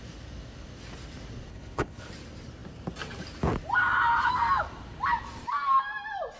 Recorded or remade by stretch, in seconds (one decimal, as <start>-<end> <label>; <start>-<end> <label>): 0.0-1.5 recorded; 1.5-2.1 remade; 2.1-6.4 recorded